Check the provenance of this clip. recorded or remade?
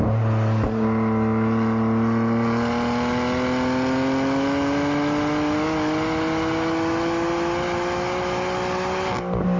recorded